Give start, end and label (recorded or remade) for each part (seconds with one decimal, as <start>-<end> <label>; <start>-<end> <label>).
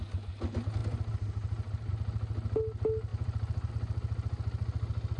0.0-3.1 recorded; 3.1-3.7 remade; 3.7-5.2 recorded